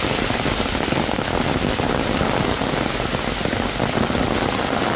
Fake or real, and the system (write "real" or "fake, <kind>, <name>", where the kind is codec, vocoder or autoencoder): real